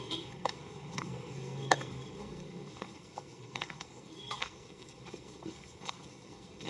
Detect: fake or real fake